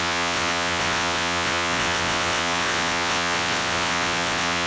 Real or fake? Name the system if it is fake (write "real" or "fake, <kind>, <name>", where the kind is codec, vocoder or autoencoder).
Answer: fake, vocoder, WaveNeXt